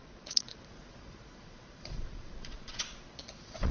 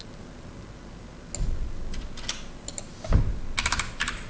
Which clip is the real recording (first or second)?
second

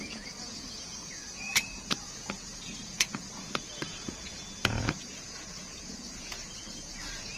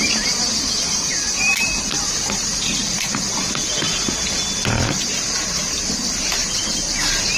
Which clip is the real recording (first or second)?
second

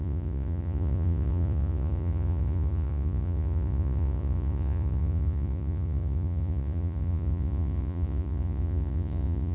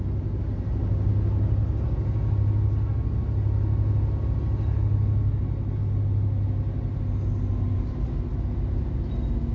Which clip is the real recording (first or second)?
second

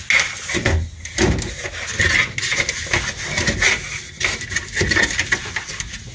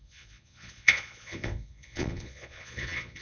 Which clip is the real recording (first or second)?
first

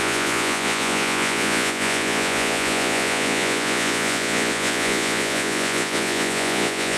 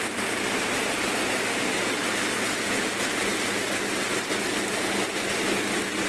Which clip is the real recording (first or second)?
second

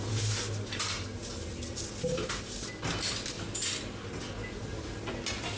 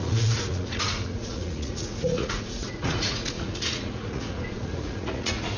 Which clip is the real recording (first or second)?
first